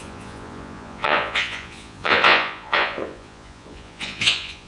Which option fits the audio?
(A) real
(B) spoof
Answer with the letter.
B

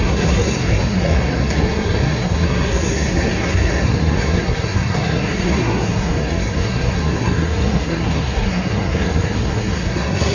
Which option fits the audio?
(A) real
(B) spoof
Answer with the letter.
B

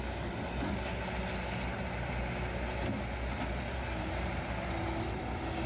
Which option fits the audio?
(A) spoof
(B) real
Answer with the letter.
B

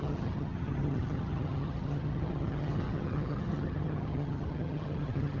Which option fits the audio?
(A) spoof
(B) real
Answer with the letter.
A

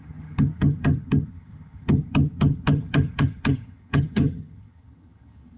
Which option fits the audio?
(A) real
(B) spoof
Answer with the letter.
B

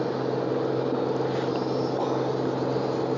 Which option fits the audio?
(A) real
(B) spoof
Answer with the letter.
A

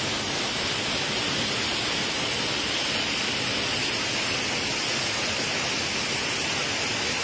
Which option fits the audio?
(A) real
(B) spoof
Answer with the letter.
A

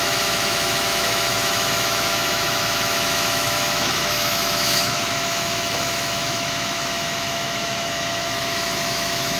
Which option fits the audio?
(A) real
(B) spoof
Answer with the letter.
B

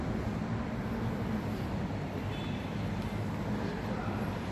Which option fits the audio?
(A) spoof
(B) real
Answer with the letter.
B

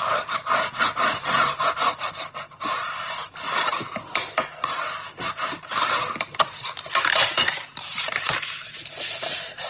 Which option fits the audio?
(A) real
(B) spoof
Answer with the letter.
B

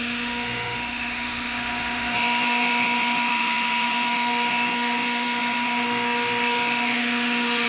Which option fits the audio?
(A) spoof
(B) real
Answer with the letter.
A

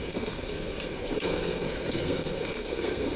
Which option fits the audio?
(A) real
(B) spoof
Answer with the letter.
B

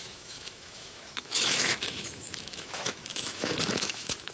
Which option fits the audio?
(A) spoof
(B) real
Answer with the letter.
A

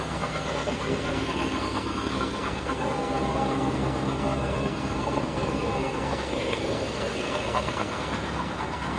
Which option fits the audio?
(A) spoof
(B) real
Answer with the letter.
A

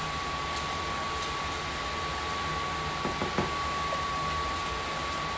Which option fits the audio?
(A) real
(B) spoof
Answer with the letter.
A